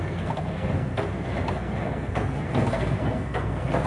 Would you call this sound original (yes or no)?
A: no